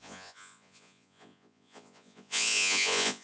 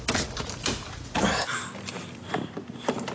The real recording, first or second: second